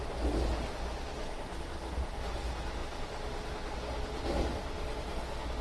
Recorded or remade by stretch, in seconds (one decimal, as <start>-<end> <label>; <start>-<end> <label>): 0.0-5.6 recorded